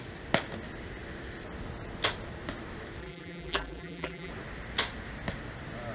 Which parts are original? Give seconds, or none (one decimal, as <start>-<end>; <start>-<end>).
0.0-3.0; 4.3-5.9